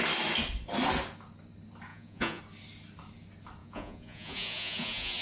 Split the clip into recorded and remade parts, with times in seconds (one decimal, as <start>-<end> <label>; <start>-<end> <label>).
0.0-1.9 recorded; 1.9-2.4 remade; 2.4-3.6 recorded; 3.6-5.2 remade